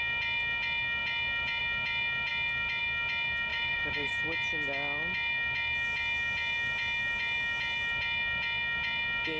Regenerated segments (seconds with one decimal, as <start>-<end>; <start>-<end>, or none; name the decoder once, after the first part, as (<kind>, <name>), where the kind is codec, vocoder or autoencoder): 3.5-4.1 (vocoder, BigVGAN v2)